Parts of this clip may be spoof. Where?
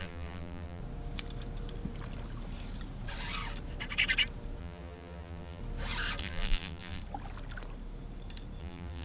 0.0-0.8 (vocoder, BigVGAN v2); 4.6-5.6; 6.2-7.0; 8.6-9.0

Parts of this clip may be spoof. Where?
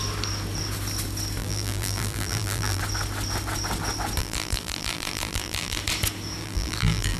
1.4-2.8 (vocoder, BigVGAN v2); 4.2-5.8; 6.4-7.2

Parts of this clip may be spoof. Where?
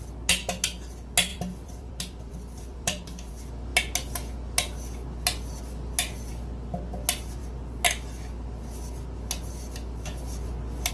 1.3-3.3 (vocoder, BigVGAN v2)